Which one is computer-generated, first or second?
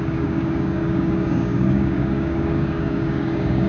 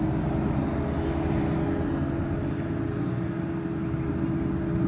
first